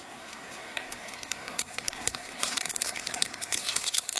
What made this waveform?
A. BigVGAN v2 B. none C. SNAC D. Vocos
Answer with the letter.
C